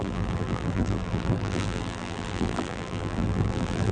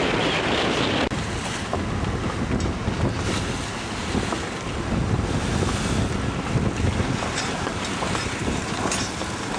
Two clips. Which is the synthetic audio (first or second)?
first